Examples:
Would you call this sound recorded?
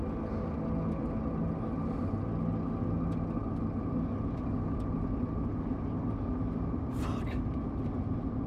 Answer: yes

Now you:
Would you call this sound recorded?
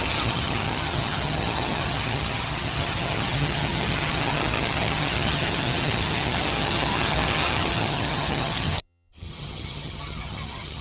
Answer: no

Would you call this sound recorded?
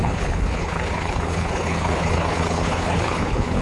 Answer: no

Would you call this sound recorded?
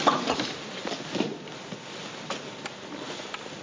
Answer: yes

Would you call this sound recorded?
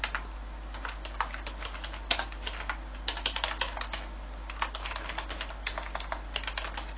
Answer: yes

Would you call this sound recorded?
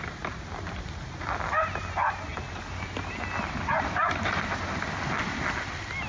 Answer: yes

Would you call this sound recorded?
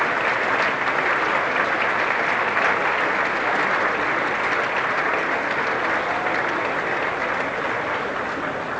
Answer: yes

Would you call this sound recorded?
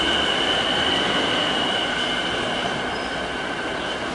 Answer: yes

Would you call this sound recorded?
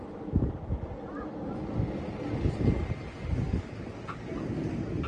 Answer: yes